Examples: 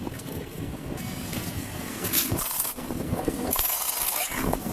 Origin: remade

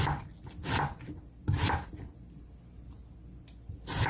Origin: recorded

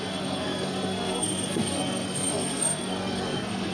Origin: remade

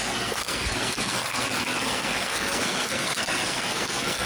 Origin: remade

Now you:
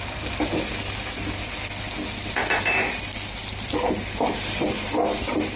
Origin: recorded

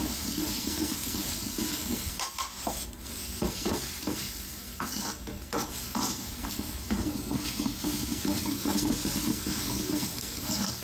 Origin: remade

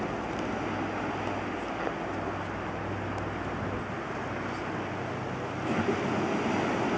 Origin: recorded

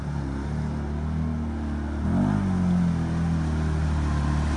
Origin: recorded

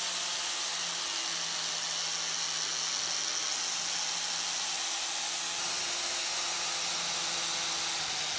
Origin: recorded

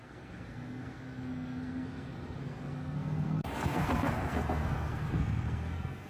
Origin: remade